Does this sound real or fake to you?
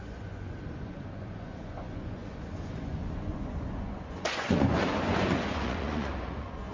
fake